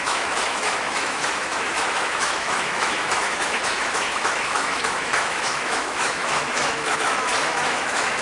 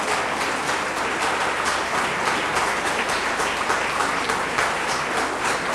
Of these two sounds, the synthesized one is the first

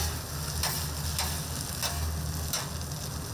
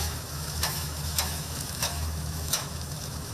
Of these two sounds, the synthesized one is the second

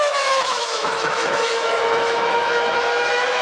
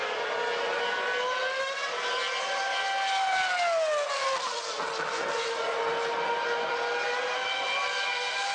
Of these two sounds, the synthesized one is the first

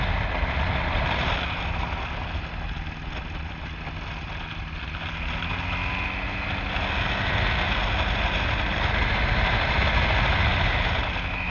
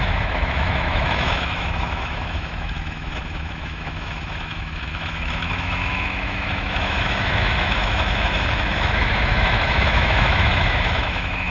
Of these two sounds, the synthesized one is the second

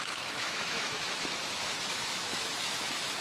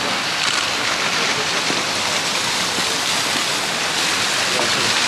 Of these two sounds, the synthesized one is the first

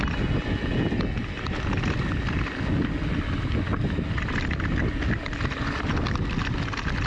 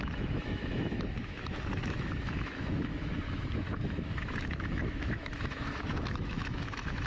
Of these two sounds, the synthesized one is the second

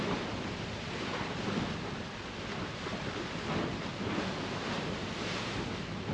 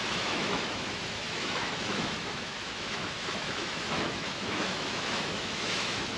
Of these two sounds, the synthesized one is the second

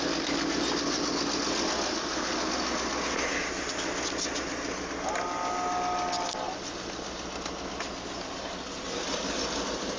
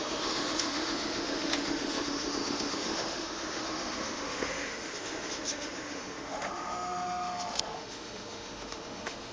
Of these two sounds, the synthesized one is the second